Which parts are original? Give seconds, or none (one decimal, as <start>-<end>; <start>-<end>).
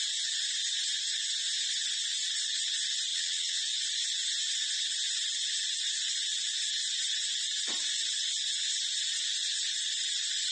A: 0.0-3.1; 3.6-10.5